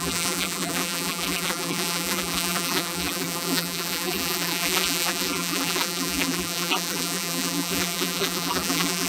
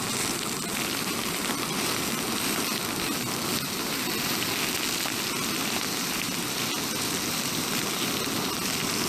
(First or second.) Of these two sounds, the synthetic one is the first